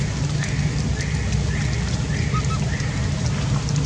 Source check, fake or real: real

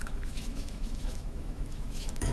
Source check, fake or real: fake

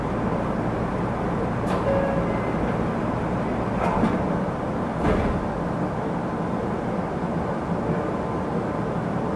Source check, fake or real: real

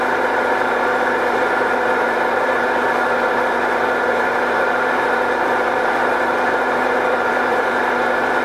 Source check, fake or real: fake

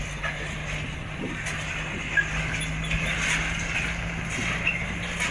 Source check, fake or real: real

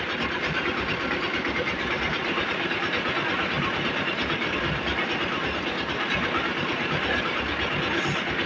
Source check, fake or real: real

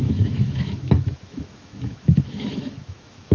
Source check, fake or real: fake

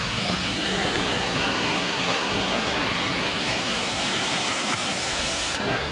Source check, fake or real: fake